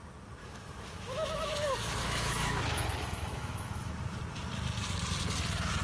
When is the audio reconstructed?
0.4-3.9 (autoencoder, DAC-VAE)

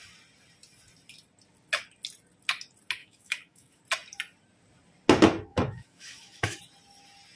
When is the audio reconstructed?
3.0-3.8 (autoencoder, DAC-VAE); 5.5-6.6